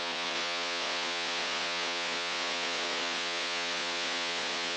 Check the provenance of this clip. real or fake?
fake